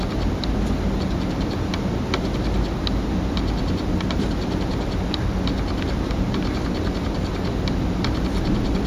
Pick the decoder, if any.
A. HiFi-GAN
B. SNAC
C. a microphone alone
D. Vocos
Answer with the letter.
C